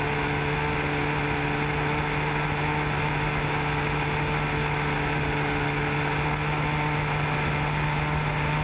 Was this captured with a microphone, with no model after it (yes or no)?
yes